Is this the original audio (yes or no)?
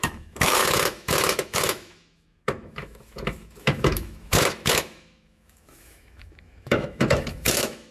no